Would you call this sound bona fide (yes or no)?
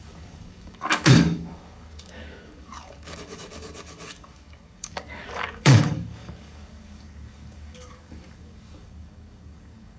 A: no